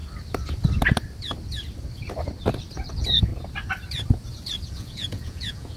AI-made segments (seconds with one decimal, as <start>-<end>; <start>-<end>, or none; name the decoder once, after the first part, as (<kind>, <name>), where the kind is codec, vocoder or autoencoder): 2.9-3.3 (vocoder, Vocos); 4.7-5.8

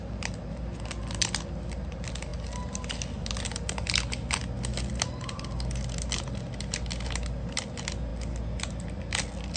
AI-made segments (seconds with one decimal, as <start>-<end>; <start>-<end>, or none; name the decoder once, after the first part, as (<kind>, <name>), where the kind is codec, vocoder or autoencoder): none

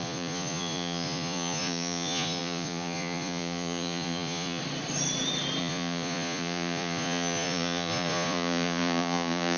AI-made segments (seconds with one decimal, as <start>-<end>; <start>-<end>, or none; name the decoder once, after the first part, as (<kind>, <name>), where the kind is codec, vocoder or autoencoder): 0.0-4.6 (vocoder, Vocos); 5.6-9.6

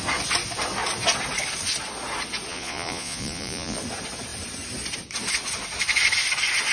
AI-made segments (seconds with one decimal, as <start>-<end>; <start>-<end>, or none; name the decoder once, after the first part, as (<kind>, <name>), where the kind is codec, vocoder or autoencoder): 2.5-3.8 (vocoder, Vocos)

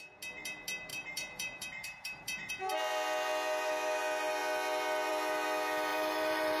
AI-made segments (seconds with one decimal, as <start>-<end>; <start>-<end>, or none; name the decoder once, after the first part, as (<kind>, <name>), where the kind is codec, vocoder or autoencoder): 0.9-2.5 (vocoder, BigVGAN v2); 5.9-6.6